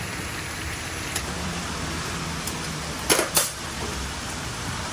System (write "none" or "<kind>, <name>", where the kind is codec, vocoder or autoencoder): vocoder, BigVGAN v2